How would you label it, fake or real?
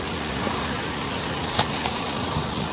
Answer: fake